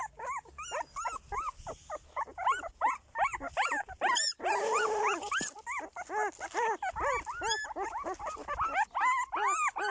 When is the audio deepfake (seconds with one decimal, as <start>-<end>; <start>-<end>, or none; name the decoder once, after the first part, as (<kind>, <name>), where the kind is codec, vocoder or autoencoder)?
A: 2.5-5.5 (vocoder, BigVGAN v2)